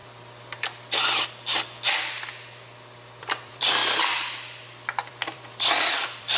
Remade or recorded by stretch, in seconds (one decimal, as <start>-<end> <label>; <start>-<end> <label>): 0.0-3.2 recorded; 3.2-3.8 remade; 3.8-5.1 recorded; 5.1-6.4 remade